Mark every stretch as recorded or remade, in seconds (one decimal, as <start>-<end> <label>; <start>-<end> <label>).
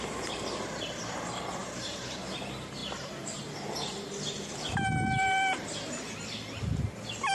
0.0-7.3 recorded